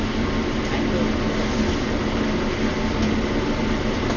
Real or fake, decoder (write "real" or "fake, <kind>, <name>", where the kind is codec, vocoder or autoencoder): real